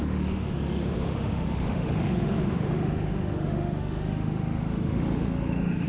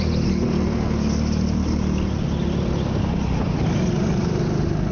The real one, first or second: second